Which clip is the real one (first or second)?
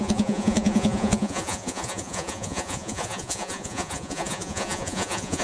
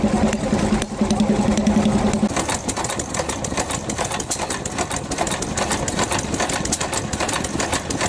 second